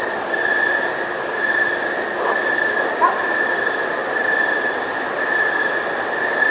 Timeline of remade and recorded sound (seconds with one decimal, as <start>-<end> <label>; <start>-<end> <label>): 0.0-6.5 recorded